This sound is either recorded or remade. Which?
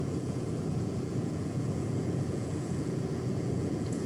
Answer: remade